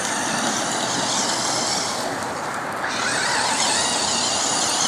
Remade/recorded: recorded